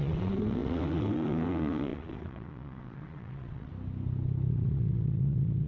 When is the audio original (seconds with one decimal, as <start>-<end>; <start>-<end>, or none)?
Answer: 3.7-4.5